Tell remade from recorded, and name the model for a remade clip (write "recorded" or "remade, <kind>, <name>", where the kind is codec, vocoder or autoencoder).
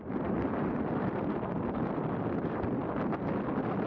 recorded